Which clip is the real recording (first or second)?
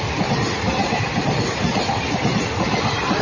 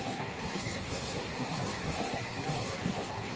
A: first